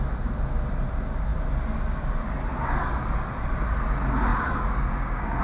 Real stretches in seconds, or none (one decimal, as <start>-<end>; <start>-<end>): 0.0-4.3